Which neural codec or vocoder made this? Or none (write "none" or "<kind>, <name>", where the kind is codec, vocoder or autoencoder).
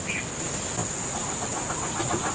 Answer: none